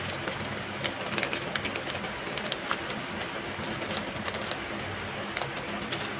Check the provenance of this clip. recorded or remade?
recorded